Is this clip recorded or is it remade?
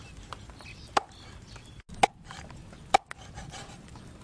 recorded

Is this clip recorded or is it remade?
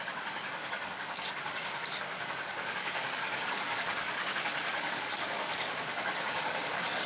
remade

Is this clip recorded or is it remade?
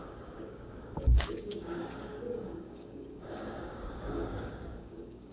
remade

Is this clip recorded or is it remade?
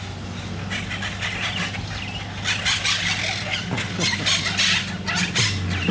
recorded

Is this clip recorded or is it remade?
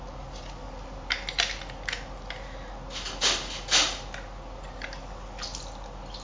recorded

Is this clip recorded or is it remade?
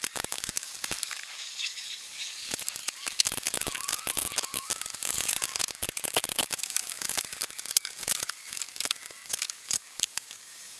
remade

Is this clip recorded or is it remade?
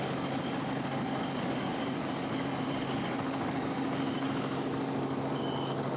remade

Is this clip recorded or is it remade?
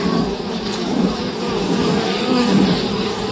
remade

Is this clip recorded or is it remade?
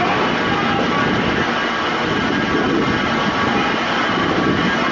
recorded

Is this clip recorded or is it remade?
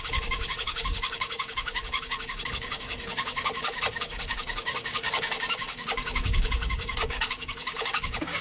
remade